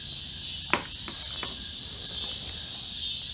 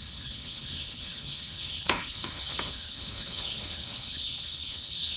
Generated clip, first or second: second